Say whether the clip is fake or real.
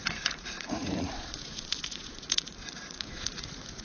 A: fake